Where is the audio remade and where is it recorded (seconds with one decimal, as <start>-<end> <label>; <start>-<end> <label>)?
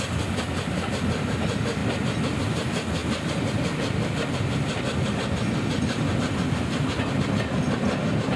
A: 0.0-8.4 recorded